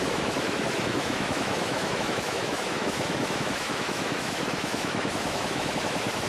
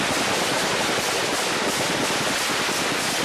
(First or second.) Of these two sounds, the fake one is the first